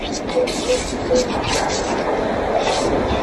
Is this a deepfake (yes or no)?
no